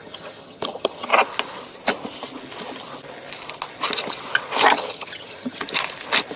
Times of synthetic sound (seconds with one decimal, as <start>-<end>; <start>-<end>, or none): 0.0-1.1; 4.7-5.6